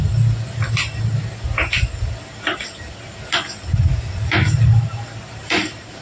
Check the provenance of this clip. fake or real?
real